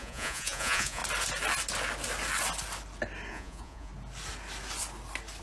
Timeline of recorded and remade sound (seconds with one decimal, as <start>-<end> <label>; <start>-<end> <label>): 0.0-1.0 remade; 1.0-3.3 recorded; 3.3-3.9 remade; 3.9-5.4 recorded